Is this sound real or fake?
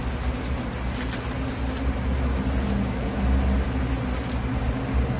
real